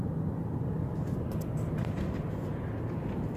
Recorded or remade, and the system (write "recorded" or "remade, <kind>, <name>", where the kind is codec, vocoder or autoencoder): recorded